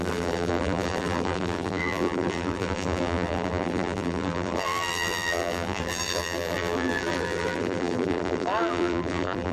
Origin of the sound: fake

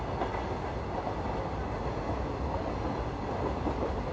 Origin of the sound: real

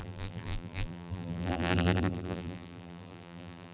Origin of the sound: fake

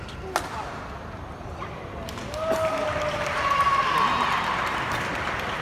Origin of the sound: fake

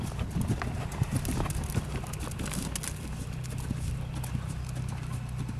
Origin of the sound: real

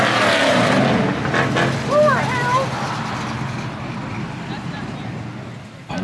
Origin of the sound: real